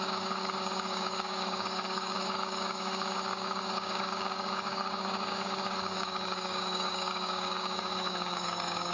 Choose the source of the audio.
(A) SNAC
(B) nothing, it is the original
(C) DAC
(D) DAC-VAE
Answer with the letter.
C